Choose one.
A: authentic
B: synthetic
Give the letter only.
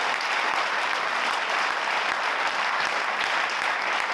A